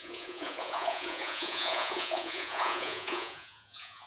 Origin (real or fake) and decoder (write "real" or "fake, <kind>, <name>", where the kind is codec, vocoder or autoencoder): fake, vocoder, Vocos